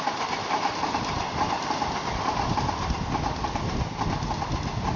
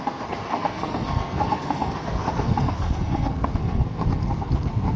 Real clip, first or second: first